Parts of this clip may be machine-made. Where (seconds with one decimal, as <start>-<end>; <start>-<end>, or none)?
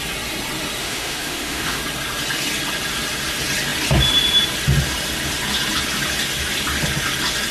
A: 0.8-1.8